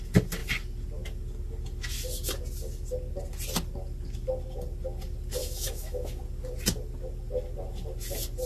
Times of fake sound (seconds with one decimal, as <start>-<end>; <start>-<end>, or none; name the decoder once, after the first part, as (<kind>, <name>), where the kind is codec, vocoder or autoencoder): 5.4-6.2 (autoencoder, DAC-VAE)